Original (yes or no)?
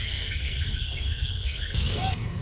no